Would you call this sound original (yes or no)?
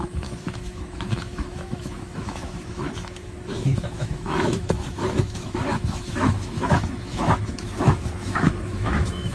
no